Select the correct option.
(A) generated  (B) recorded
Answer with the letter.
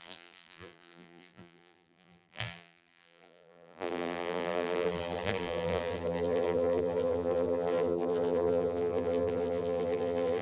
A